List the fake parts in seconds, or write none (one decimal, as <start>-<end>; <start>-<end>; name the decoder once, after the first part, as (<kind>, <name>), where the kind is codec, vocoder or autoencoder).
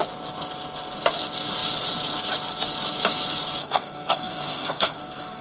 3.6-5.4 (codec, SNAC)